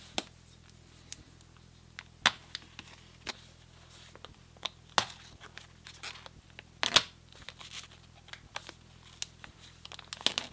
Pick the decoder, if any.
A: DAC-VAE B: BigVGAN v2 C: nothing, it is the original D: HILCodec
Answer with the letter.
C